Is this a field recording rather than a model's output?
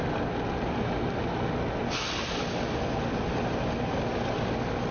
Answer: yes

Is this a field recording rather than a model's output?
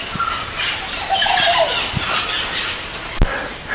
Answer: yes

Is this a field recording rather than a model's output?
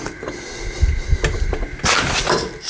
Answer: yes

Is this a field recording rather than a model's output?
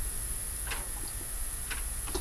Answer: yes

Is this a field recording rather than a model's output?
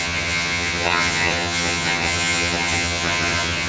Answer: no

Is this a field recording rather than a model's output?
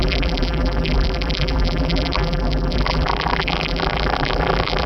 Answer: no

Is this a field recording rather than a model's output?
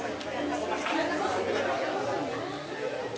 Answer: yes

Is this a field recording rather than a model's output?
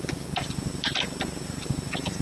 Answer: yes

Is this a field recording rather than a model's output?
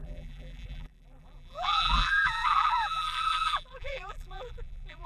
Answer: no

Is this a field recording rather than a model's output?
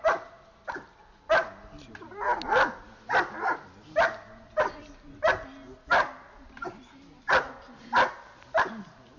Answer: yes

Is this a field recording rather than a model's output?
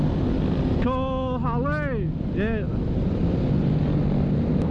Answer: yes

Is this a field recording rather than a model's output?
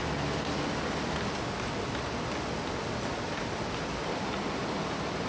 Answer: yes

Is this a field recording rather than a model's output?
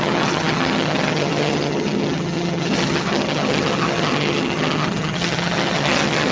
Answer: no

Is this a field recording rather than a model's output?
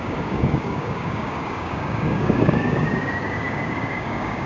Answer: no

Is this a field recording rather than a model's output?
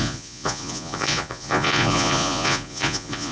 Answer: no